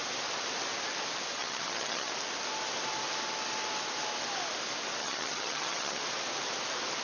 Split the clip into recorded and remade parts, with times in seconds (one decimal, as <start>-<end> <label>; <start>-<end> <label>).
0.0-1.4 recorded; 1.4-2.1 remade; 2.1-5.0 recorded; 5.0-6.0 remade; 6.0-7.0 recorded